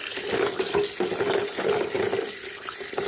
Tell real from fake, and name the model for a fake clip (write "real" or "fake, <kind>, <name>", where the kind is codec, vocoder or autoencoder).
real